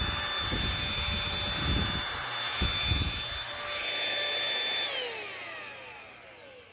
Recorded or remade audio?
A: recorded